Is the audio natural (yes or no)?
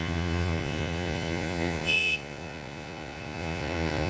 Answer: no